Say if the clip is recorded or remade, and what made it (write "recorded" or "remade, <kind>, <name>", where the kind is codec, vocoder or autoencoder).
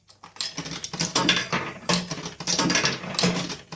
recorded